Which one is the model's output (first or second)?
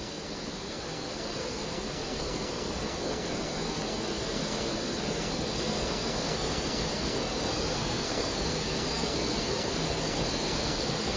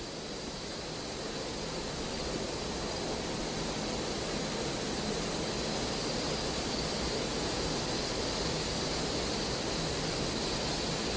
first